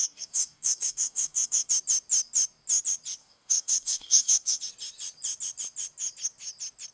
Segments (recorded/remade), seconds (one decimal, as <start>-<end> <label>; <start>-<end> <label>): 0.0-1.7 remade; 1.7-3.2 recorded; 3.2-4.6 remade; 4.6-6.9 recorded